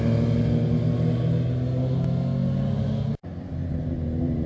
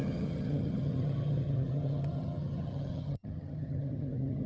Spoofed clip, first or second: second